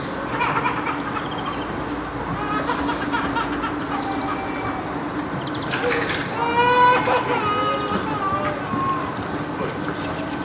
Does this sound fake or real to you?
real